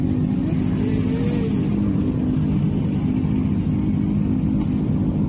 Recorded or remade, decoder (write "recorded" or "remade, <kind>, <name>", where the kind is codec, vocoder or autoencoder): recorded